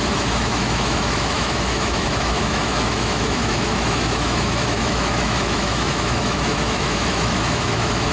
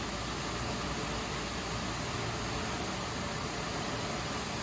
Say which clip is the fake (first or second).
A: first